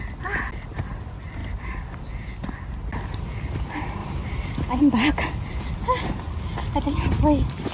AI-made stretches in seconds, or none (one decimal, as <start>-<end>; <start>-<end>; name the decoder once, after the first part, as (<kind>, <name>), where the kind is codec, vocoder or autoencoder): 4.0-4.8 (vocoder, BigVGAN v2)